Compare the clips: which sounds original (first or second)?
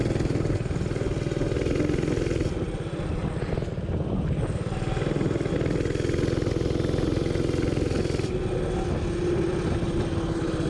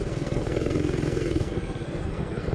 first